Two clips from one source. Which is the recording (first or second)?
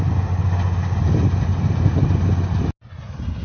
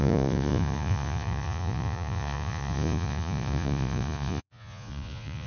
first